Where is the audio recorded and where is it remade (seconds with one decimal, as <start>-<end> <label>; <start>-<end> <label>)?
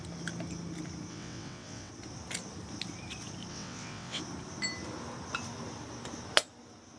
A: 0.0-1.1 recorded; 1.1-1.9 remade; 1.9-3.5 recorded; 3.5-4.2 remade; 4.2-7.0 recorded